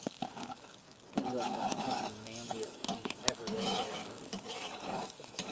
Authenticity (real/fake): fake